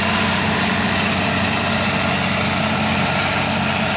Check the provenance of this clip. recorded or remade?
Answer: recorded